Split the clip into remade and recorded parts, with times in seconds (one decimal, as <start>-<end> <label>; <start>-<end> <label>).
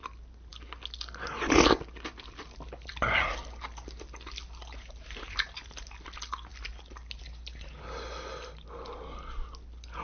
0.0-10.0 recorded